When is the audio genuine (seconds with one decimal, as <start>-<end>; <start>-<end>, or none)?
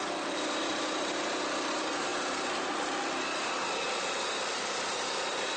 0.0-5.6